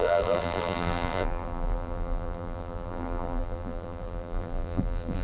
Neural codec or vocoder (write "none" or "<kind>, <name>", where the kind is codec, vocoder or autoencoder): vocoder, BigVGAN v2